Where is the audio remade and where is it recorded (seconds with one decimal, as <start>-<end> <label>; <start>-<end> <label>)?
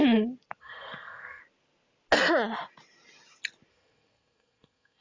0.0-0.6 recorded; 0.6-1.4 remade; 1.4-3.7 recorded; 3.7-5.0 remade